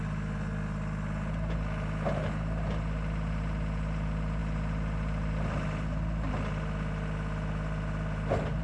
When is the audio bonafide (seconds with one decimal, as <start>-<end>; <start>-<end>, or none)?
0.0-8.6